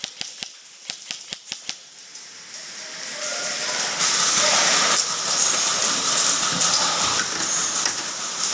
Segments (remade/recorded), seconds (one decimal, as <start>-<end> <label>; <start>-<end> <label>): 0.0-8.5 recorded